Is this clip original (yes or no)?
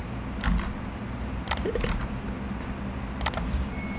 yes